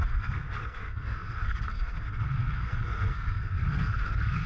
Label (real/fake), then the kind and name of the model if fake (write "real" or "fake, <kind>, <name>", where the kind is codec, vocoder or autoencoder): fake, codec, SNAC